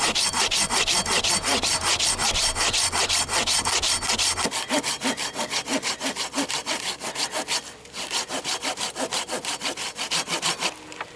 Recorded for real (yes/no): yes